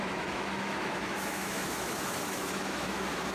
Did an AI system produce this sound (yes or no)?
yes